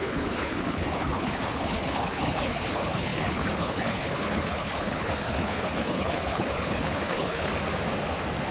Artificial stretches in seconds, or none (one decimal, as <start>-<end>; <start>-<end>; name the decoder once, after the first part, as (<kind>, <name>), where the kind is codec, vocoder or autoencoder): 0.0-7.5 (codec, HILCodec)